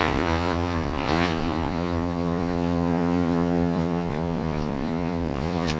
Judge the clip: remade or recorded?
remade